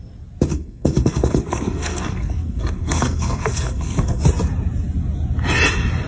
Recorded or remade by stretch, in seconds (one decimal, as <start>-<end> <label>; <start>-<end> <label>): 0.0-0.5 recorded; 0.5-4.2 remade; 4.2-6.1 recorded